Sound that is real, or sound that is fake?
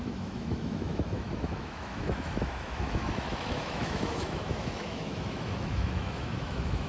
fake